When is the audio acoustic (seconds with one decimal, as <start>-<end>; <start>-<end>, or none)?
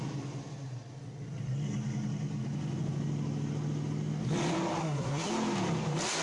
0.0-4.8; 5.3-6.2